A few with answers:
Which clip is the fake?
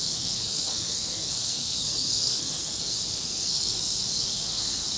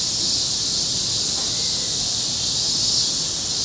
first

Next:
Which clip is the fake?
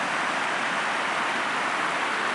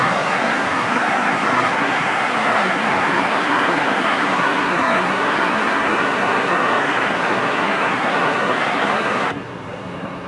second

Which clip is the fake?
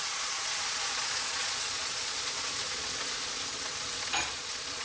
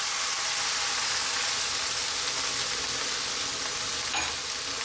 first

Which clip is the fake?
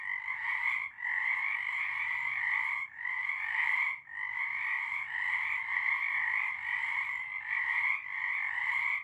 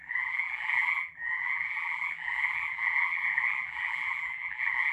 second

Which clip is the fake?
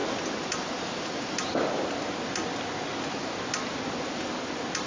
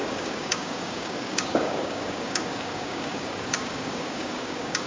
second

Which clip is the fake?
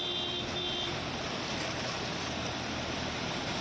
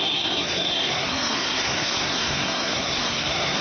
second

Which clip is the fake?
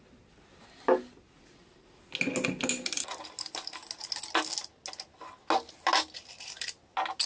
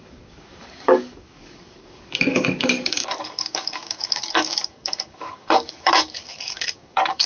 second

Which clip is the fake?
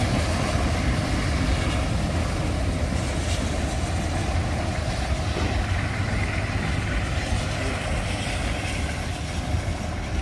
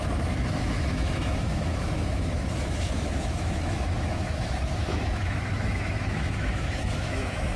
second